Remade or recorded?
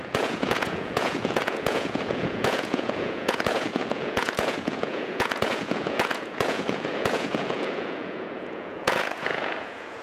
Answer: remade